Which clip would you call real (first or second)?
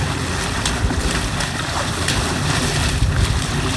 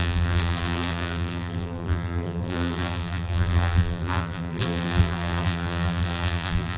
first